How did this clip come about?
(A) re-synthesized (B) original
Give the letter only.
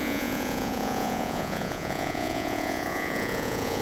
A